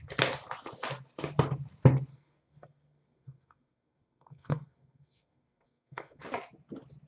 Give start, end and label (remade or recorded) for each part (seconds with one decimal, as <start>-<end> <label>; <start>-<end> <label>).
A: 0.0-2.1 recorded; 2.1-6.2 remade; 6.2-7.1 recorded